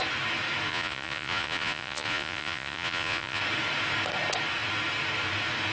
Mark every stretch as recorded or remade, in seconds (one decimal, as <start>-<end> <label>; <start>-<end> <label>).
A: 0.0-0.7 recorded; 0.7-3.4 remade; 3.4-5.7 recorded